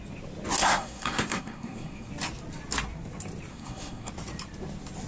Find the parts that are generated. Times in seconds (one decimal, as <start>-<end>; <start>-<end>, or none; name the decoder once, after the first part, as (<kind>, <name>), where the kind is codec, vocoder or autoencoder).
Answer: 0.6-2.1 (codec, SNAC); 3.5-4.1